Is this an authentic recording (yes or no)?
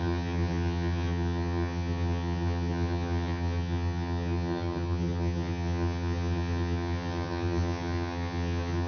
no